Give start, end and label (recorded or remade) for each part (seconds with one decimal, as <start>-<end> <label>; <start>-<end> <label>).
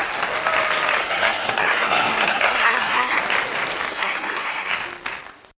0.0-1.0 recorded; 1.0-3.2 remade; 3.2-3.9 recorded; 3.9-4.7 remade; 4.7-5.6 recorded